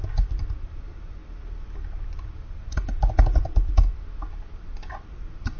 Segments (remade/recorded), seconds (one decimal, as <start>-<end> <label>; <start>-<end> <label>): 0.0-5.6 remade